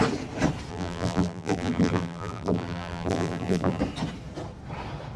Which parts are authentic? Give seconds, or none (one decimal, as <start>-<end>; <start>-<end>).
0.0-0.7; 3.8-5.2